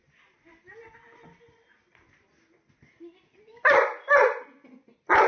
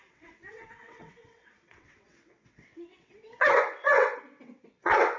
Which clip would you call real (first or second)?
first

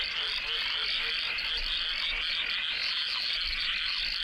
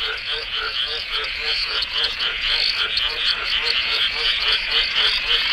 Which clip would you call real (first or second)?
first